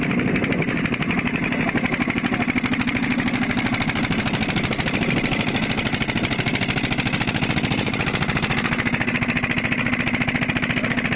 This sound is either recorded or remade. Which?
recorded